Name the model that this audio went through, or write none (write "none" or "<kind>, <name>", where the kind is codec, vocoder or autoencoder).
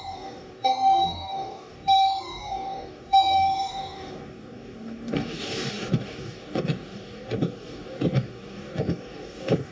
codec, DAC